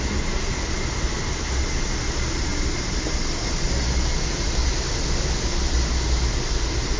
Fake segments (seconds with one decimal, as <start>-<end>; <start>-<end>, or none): none